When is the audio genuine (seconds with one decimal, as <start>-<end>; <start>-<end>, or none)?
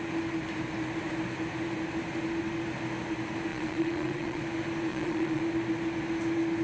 0.0-3.5; 4.4-4.9; 5.4-6.6